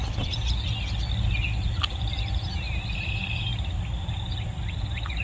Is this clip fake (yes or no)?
no